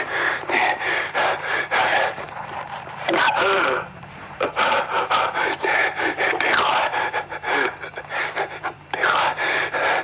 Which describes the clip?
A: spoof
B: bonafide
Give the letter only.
A